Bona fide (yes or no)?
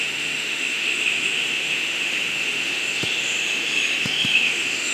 no